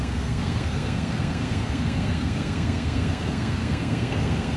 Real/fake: fake